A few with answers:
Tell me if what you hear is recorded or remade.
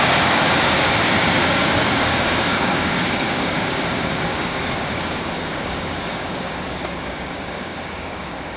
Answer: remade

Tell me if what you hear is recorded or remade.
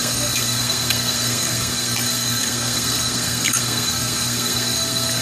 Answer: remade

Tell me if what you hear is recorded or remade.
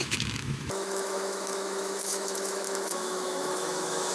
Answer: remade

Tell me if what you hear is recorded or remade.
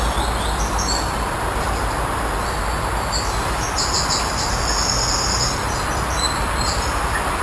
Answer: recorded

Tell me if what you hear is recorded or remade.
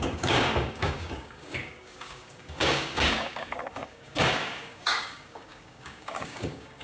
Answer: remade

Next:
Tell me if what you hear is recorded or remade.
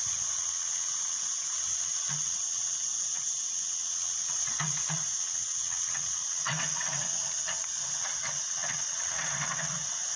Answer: remade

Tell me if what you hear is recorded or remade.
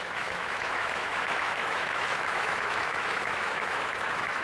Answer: remade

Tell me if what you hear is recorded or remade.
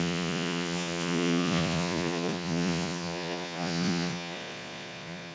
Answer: remade